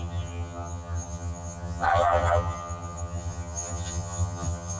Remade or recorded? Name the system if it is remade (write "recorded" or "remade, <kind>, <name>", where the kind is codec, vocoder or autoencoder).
remade, vocoder, HiFi-GAN